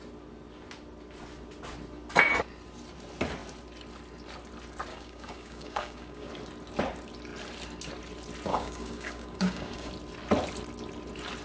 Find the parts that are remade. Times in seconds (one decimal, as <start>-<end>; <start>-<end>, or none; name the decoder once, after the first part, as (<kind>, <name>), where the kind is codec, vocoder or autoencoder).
4.9-6.3 (codec, DAC); 8.5-9.9